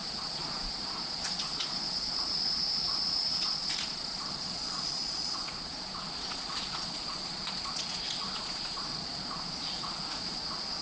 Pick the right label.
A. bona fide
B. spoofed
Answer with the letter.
B